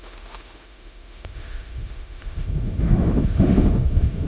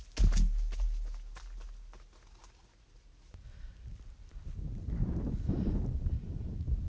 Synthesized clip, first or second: first